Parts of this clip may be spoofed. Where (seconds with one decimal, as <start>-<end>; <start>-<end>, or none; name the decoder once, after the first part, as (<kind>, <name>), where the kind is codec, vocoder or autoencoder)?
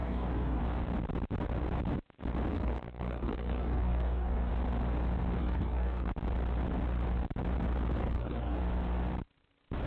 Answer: 0.0-0.6 (codec, DAC); 2.5-4.5; 5.4-6.1; 8.0-8.6